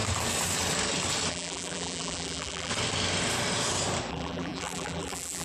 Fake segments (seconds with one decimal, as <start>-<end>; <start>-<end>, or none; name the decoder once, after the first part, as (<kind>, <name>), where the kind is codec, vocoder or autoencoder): 1.3-2.7 (vocoder, BigVGAN v2); 4.1-5.4